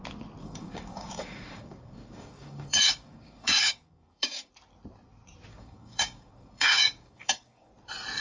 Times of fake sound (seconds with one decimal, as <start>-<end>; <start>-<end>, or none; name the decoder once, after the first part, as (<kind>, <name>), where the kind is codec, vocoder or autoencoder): 0.4-4.5 (codec, DAC); 5.5-7.7